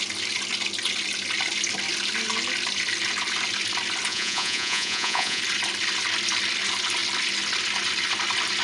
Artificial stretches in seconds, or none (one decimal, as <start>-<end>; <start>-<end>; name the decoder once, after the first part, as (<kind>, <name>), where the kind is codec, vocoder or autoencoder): 4.1-5.4 (vocoder, Vocos)

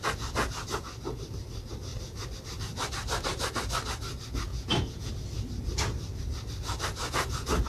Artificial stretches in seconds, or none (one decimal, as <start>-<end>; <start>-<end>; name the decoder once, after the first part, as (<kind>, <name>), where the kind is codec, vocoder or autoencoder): 4.5-5.1 (vocoder, Vocos)

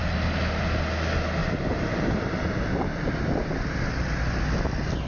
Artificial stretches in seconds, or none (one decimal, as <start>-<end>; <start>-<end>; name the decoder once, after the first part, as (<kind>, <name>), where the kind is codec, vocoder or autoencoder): none

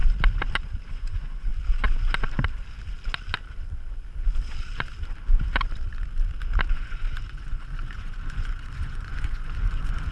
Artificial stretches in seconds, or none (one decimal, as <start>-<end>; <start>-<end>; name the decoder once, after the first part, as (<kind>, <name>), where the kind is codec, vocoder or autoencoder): 0.9-1.5 (vocoder, Vocos); 6.7-10.1

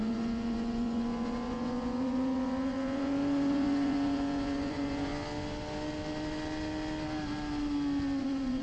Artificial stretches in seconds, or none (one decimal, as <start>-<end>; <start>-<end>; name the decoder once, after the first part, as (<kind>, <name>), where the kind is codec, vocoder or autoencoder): 0.0-5.1 (vocoder, Vocos); 8.2-8.6

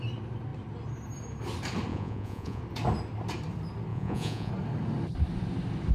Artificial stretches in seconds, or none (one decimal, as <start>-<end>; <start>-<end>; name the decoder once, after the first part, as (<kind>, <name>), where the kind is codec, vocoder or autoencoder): 1.9-2.6 (vocoder, Vocos); 3.9-4.5

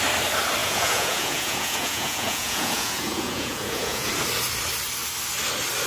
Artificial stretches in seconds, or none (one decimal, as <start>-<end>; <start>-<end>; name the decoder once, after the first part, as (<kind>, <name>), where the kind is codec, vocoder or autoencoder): 0.6-4.1 (vocoder, Vocos)

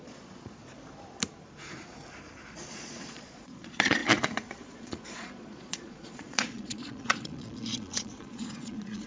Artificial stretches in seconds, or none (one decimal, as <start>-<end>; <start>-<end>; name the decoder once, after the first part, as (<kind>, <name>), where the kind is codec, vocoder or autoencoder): 0.0-0.6 (vocoder, Vocos); 2.7-9.1